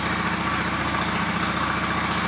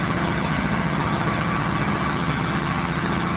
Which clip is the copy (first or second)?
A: second